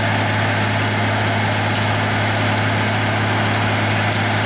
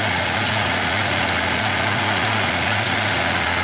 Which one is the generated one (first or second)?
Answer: second